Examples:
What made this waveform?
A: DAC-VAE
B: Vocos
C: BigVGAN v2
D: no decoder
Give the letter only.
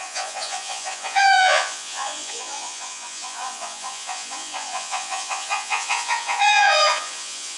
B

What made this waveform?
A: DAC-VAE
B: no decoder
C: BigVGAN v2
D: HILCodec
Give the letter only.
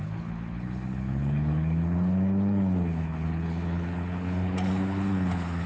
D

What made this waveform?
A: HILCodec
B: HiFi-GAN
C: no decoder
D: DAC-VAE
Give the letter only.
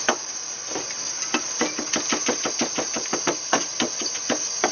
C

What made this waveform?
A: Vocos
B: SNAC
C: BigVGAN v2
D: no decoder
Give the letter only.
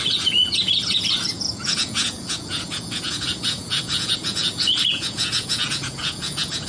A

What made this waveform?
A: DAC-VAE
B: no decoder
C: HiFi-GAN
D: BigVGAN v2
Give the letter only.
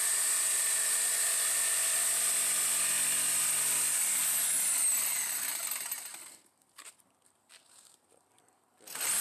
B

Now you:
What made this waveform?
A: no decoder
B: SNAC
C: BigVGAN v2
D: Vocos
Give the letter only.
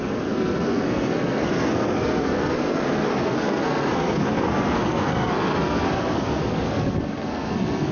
B